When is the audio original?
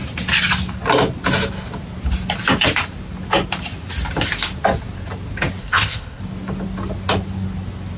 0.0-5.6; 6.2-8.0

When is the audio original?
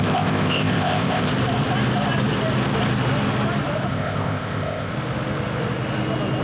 1.3-3.9; 4.9-6.4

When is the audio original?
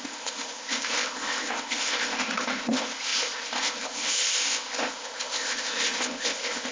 none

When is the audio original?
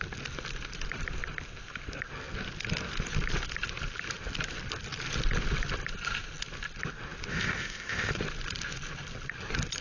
0.0-7.3; 8.1-9.8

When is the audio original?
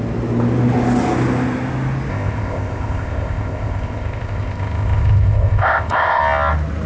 0.0-2.1; 6.2-6.9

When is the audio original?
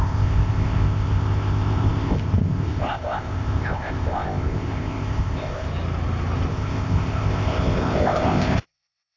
5.7-6.5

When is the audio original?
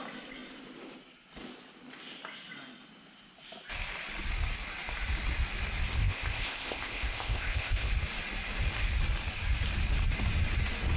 0.0-6.0; 7.9-11.0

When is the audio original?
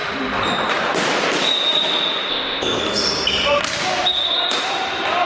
0.0-2.3; 2.8-5.2